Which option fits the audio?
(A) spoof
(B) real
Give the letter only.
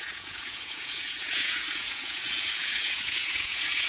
A